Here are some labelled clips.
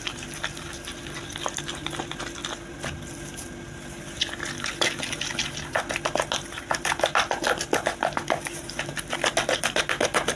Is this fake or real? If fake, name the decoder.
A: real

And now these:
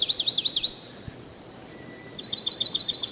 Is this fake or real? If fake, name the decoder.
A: fake, vocoder, BigVGAN v2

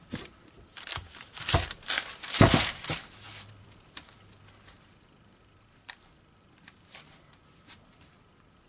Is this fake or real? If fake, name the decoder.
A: fake, vocoder, BigVGAN v2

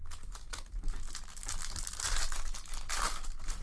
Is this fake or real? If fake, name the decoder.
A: real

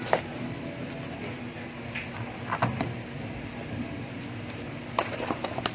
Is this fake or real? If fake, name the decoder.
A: real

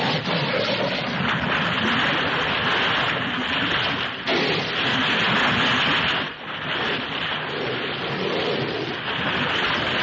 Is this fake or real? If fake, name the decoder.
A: real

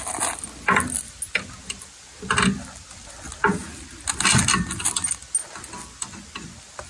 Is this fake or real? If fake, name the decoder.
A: real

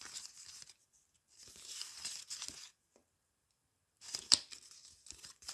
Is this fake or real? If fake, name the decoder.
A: fake, vocoder, BigVGAN v2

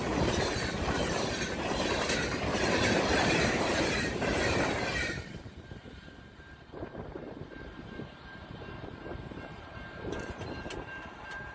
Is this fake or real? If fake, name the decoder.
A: fake, vocoder, BigVGAN v2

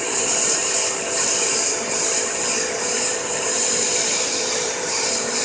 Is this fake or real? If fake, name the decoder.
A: fake, vocoder, BigVGAN v2